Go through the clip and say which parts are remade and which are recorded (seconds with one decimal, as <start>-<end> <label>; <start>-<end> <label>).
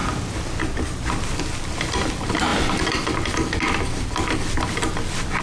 0.0-5.4 recorded